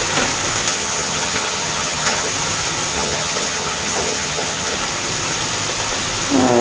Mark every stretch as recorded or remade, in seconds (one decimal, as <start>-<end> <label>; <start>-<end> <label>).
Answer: 0.0-0.7 recorded; 0.7-2.3 remade; 2.3-2.9 recorded; 2.9-4.8 remade; 4.8-6.6 recorded